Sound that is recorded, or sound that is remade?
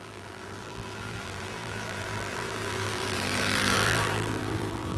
remade